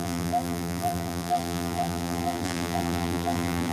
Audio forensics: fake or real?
fake